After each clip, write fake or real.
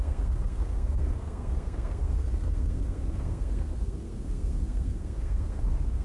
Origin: fake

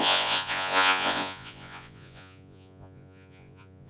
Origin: fake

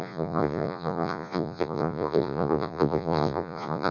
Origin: fake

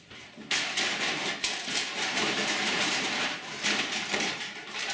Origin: fake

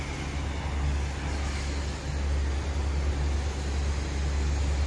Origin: real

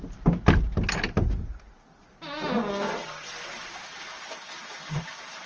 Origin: real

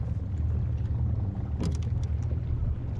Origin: real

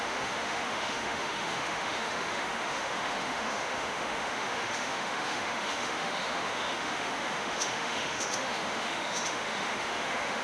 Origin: fake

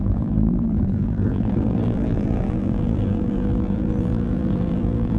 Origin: fake